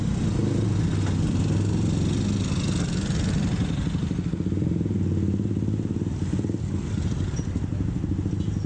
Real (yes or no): yes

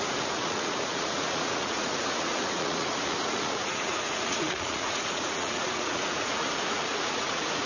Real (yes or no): no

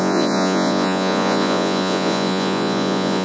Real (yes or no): no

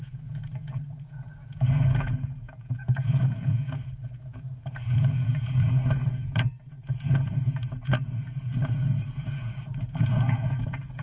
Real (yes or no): no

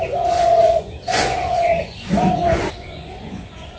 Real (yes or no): no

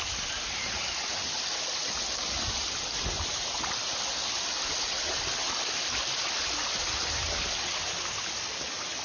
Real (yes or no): yes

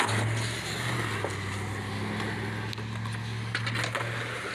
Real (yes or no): yes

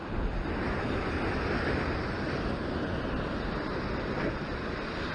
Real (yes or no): yes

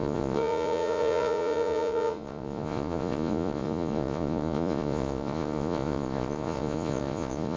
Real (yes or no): no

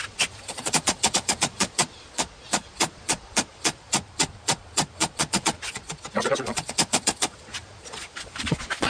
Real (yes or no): no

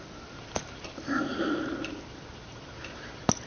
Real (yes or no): yes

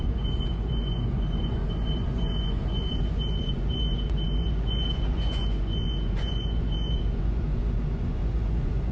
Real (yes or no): no